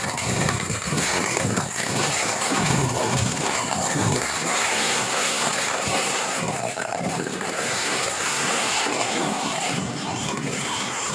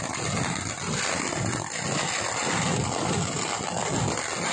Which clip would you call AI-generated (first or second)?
first